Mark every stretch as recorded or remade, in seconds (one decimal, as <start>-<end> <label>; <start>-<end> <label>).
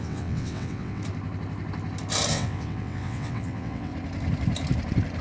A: 0.0-1.0 remade; 1.0-2.3 recorded; 2.3-3.9 remade; 3.9-5.2 recorded